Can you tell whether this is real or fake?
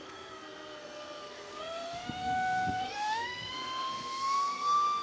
fake